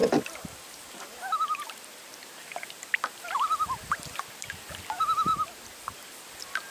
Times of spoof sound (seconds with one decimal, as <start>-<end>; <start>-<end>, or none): none